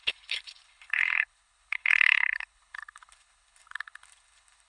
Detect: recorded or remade remade